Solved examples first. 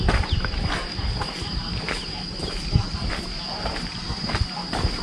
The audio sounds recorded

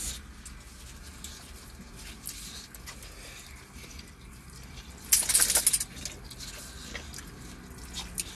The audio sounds recorded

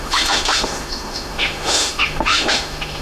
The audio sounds remade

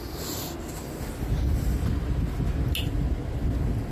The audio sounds recorded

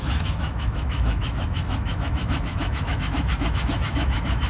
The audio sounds remade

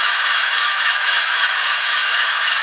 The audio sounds remade